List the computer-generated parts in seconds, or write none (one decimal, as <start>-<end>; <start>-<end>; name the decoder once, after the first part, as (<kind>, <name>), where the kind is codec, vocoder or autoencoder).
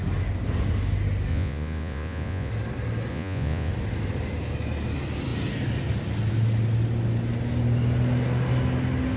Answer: 1.3-2.5 (vocoder, Vocos); 3.1-3.7